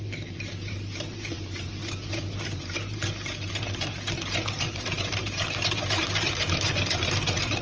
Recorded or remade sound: remade